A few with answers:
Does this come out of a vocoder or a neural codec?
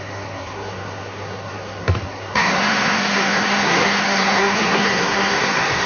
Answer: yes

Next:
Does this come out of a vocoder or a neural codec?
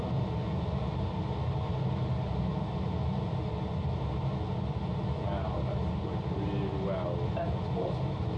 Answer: no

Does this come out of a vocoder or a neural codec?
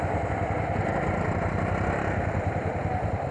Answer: no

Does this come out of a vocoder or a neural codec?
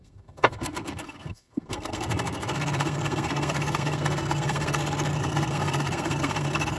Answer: yes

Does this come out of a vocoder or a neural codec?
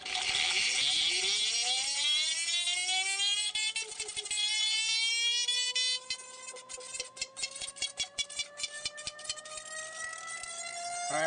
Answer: no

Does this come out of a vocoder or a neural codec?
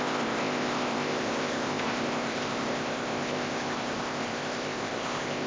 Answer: yes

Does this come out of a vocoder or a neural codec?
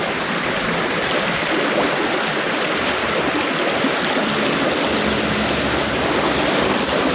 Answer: no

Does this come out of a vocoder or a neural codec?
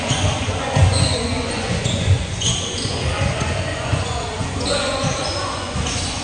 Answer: yes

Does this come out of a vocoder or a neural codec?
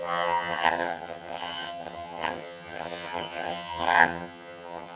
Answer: yes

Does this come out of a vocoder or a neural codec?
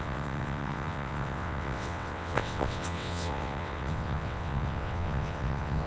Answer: yes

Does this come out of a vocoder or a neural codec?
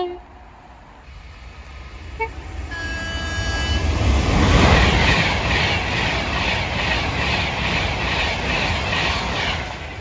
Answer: no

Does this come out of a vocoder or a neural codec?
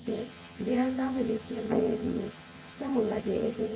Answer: yes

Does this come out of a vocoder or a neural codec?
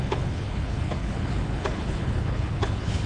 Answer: yes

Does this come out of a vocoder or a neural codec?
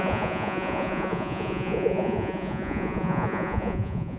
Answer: yes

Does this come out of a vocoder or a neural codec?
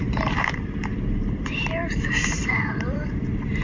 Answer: yes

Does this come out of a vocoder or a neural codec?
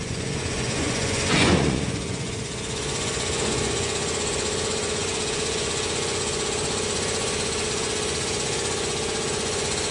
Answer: yes